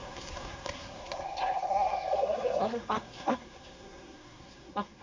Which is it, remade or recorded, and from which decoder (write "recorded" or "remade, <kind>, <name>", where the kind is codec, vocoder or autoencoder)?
remade, codec, SNAC